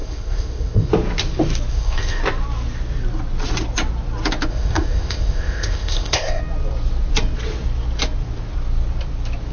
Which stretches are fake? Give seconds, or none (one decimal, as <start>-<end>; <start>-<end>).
0.0-0.9; 1.7-2.2; 4.5-6.4